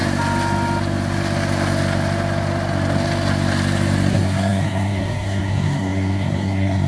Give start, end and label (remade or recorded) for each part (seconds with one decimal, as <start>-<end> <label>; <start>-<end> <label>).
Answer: 0.0-4.1 recorded; 4.1-6.9 remade